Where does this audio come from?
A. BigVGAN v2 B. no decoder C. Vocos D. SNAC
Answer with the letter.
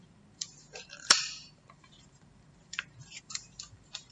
A